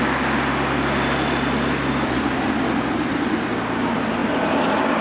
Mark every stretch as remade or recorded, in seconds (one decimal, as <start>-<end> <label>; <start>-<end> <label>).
0.0-5.0 recorded